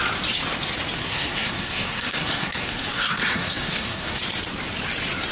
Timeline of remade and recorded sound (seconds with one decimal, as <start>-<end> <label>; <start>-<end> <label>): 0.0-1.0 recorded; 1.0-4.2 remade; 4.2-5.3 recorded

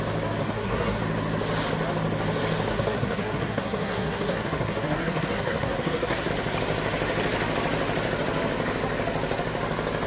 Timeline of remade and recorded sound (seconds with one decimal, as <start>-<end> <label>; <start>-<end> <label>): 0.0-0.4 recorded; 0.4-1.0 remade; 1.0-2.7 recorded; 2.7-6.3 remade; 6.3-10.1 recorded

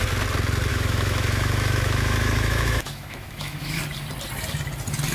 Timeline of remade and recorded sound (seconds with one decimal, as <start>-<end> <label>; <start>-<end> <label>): 0.0-0.7 recorded; 0.7-3.8 remade; 3.8-5.1 recorded

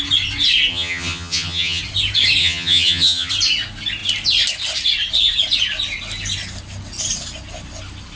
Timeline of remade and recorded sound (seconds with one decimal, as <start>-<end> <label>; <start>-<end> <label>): 0.0-0.7 recorded; 0.7-1.8 remade; 1.8-2.4 recorded; 2.4-3.3 remade; 3.3-8.2 recorded

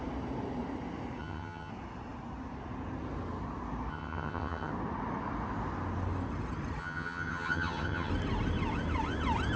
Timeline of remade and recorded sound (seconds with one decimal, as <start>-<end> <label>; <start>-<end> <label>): 0.0-1.2 recorded; 1.2-1.7 remade; 1.7-3.9 recorded; 3.9-4.7 remade; 4.7-6.8 recorded; 6.8-8.1 remade; 8.1-9.6 recorded

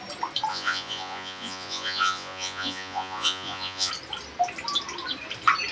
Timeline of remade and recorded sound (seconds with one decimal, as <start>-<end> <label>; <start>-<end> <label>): 0.0-0.5 recorded; 0.5-3.9 remade; 3.9-5.7 recorded